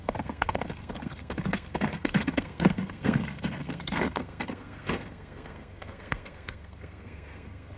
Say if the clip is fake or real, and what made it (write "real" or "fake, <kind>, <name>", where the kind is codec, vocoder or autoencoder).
fake, codec, SNAC